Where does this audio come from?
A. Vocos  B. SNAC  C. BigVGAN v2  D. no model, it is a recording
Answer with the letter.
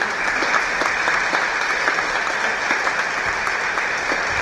D